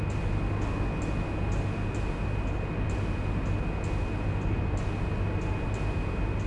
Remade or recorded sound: recorded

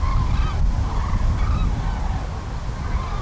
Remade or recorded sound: recorded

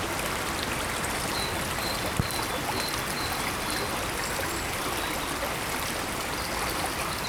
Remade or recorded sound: recorded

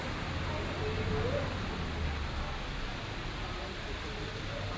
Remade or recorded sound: recorded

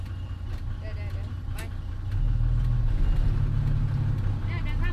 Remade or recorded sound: recorded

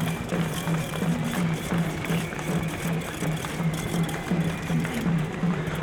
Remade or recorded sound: remade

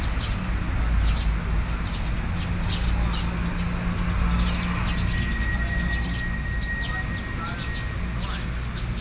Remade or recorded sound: recorded